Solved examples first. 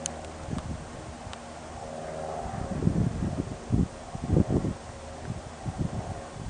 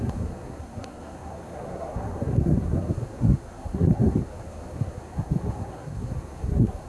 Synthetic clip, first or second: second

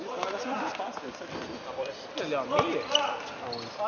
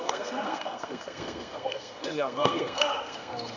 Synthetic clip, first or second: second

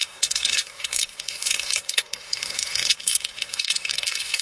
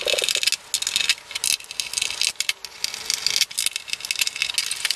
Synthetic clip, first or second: first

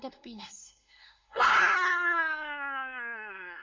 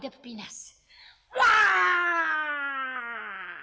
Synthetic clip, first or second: first